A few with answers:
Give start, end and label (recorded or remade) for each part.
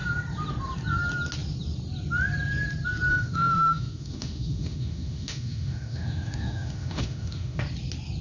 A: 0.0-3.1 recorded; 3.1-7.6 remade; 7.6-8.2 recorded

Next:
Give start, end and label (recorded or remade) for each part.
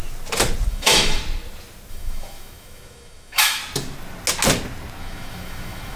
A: 0.0-0.7 recorded; 0.7-1.2 remade; 1.2-1.9 recorded; 1.9-3.6 remade; 3.6-5.0 recorded; 5.0-6.0 remade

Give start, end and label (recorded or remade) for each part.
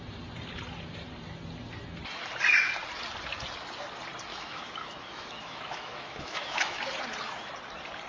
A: 0.0-4.3 recorded; 4.3-6.8 remade; 6.8-8.1 recorded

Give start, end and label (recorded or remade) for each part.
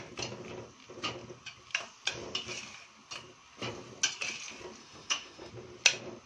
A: 0.0-4.8 recorded; 4.8-5.5 remade; 5.5-6.3 recorded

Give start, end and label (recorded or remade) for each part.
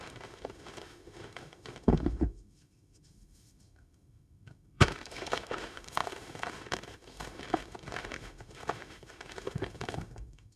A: 0.0-10.6 remade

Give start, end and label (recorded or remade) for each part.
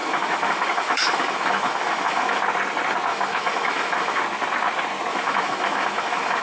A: 0.0-2.4 remade; 2.4-3.1 recorded; 3.1-4.2 remade; 4.2-5.1 recorded; 5.1-6.4 remade